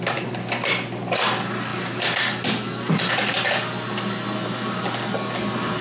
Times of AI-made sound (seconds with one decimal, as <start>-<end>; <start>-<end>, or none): none